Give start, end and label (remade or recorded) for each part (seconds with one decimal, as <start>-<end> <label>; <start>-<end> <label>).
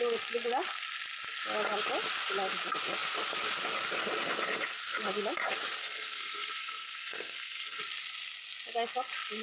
0.0-5.8 recorded; 5.8-7.8 remade; 7.8-9.4 recorded